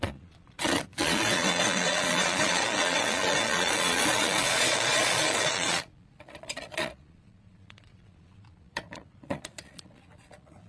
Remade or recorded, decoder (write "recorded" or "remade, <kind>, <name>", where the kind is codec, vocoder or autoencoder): remade, vocoder, Vocos